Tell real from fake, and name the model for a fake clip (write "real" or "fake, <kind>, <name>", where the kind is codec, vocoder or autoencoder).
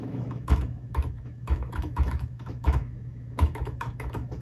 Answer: fake, autoencoder, DAC-VAE